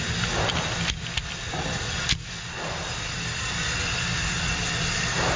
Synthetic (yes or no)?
no